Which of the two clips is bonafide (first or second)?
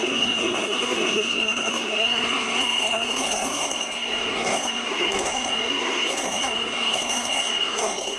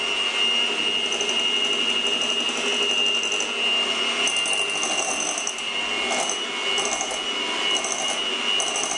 second